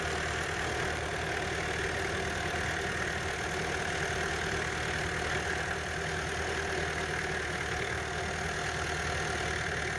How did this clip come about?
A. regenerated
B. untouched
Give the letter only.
B